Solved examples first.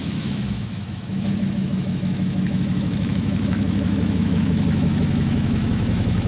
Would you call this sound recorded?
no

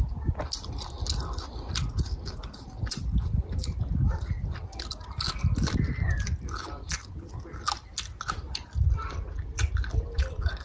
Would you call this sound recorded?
yes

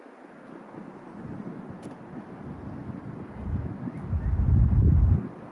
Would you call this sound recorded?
yes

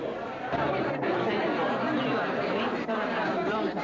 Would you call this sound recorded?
yes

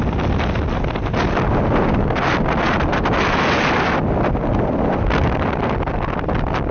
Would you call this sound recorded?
yes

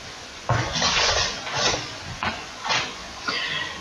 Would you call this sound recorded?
no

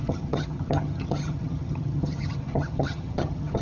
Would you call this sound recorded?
no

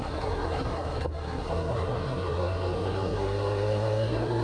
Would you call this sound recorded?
no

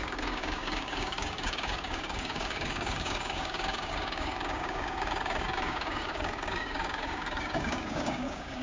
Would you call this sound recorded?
no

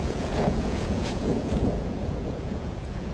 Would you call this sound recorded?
no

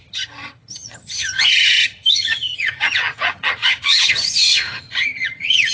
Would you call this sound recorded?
no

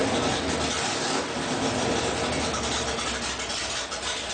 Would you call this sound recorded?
yes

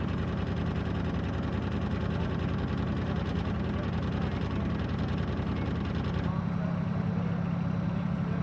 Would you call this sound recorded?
yes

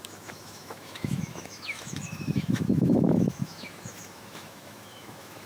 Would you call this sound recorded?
no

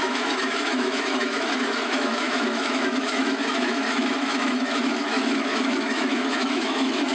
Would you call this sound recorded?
no